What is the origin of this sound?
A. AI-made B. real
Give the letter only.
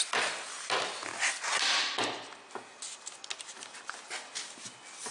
B